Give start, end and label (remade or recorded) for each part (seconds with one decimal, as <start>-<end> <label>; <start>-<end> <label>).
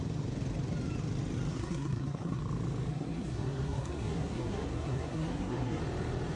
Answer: 0.0-1.5 recorded; 1.5-2.4 remade; 2.4-2.9 recorded; 2.9-5.8 remade; 5.8-6.4 recorded